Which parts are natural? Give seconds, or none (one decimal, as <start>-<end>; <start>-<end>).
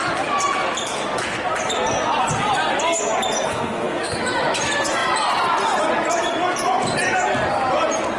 0.0-3.5; 4.1-8.2